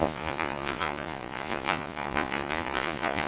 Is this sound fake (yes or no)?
yes